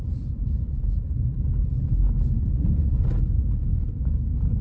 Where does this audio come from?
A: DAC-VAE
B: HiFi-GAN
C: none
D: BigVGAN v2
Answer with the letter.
D